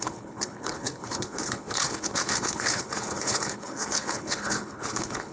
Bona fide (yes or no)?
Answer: no